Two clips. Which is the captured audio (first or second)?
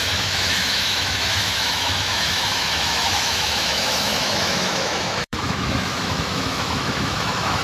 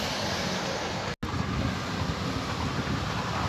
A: second